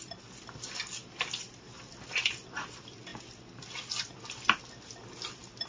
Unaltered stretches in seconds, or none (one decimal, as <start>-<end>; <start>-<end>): 0.0-1.0; 1.8-5.7